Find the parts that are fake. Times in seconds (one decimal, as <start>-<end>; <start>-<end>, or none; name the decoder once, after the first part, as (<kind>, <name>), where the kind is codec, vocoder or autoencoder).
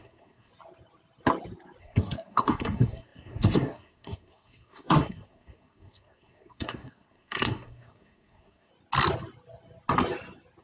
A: 0.0-0.5 (codec, SNAC); 1.8-8.7